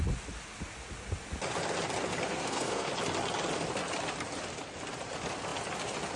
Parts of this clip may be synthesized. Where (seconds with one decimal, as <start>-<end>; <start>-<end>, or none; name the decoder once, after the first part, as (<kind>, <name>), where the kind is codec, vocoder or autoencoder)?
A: 2.3-2.9 (codec, SNAC)